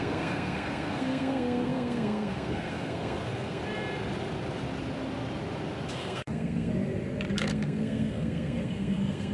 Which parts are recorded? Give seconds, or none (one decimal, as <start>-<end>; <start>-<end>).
3.6-5.9; 6.7-7.3